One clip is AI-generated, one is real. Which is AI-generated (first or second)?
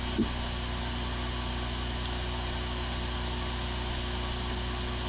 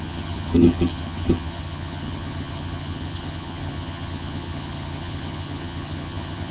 second